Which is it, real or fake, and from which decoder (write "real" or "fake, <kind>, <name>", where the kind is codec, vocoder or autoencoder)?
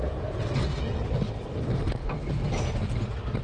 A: real